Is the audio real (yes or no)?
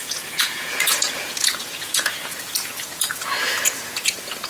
no